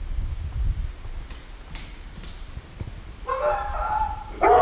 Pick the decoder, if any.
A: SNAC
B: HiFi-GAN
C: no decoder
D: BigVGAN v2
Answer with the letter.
C